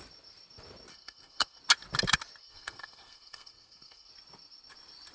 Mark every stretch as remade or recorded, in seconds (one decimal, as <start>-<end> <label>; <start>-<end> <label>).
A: 0.0-0.9 recorded; 0.9-1.6 remade; 1.6-2.4 recorded; 2.4-4.1 remade; 4.1-5.1 recorded